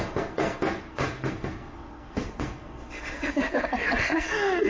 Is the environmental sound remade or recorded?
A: remade